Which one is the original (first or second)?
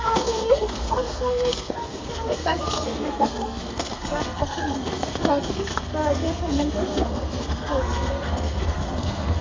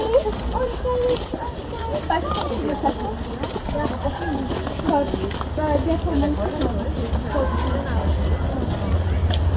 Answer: second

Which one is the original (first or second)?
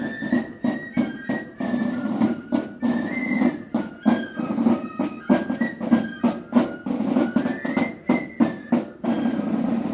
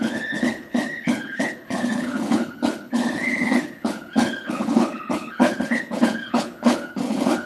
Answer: first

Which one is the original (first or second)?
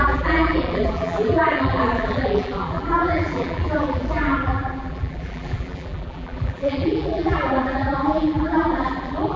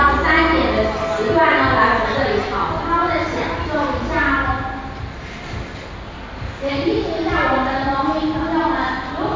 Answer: second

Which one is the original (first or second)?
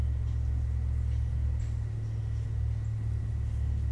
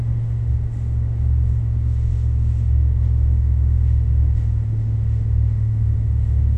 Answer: first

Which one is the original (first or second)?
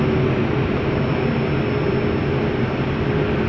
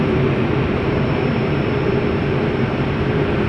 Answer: first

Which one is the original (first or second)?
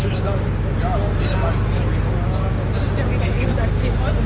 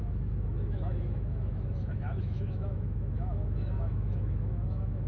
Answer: first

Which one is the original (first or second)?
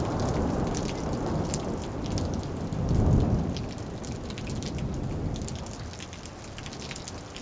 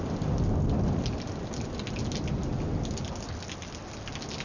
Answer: second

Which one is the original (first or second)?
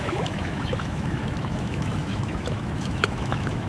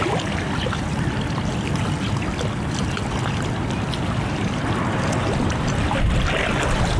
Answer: second